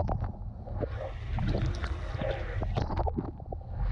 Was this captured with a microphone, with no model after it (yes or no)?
yes